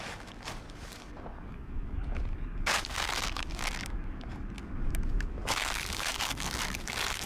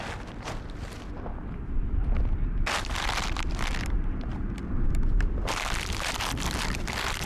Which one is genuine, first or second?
second